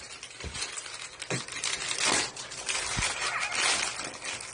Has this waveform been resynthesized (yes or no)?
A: no